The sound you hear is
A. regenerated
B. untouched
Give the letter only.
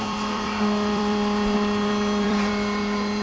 A